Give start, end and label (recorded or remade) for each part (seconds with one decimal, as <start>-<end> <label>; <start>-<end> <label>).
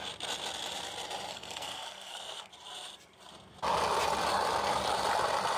0.0-1.3 recorded; 1.3-2.5 remade; 2.5-5.6 recorded